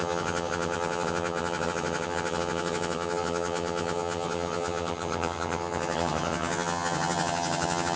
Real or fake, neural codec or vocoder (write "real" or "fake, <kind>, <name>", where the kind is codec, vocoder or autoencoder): fake, vocoder, HiFi-GAN